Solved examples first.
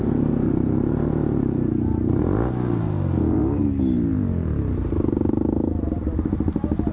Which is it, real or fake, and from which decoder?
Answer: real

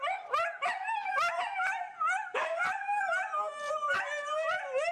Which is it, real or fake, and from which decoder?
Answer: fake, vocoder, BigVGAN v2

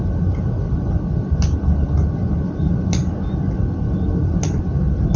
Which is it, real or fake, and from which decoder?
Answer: real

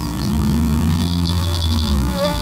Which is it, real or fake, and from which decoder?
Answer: fake, vocoder, BigVGAN v2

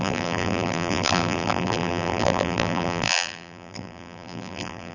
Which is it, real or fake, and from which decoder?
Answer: fake, vocoder, BigVGAN v2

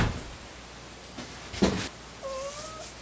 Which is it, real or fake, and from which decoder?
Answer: real